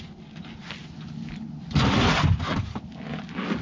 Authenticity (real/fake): real